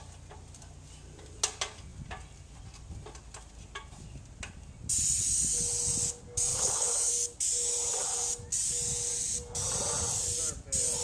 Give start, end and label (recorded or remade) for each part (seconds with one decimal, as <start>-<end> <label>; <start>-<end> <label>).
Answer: 0.0-6.5 recorded; 6.5-7.1 remade; 7.1-11.0 recorded